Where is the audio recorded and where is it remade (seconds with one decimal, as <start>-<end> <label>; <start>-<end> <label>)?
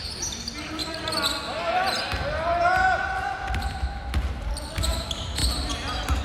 0.0-6.2 recorded